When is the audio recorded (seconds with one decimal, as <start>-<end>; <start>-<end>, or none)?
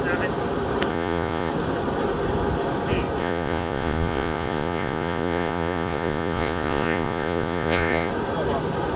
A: 0.0-0.9; 1.5-3.2; 8.1-9.0